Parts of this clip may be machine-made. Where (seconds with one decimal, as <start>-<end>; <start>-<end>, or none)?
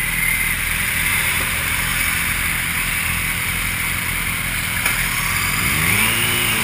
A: 1.1-1.9; 5.9-6.6